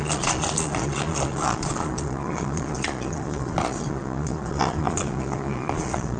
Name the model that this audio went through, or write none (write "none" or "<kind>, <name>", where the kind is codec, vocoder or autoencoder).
vocoder, Vocos